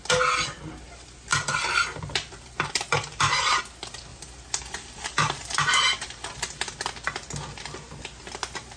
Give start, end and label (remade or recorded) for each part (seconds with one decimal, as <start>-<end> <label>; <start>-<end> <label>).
0.0-1.3 recorded; 1.3-3.6 remade; 3.6-4.1 recorded; 4.1-6.4 remade; 6.4-8.8 recorded